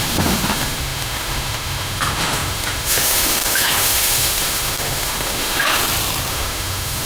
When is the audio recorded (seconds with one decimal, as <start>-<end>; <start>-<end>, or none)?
5.8-6.3